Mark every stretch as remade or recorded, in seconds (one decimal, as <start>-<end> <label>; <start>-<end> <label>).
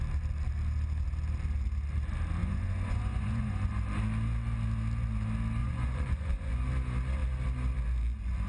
0.0-2.4 recorded; 2.4-3.7 remade; 3.7-5.6 recorded; 5.6-6.7 remade; 6.7-8.5 recorded